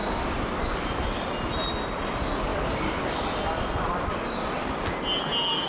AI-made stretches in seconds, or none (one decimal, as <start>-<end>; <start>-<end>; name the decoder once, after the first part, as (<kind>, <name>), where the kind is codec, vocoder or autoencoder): none